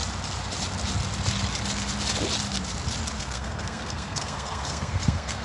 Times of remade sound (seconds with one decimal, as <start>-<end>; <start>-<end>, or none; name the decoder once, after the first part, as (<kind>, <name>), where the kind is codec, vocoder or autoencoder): 3.2-5.4 (codec, SNAC)